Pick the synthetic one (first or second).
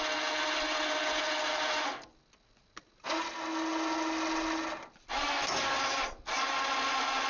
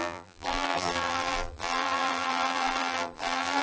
second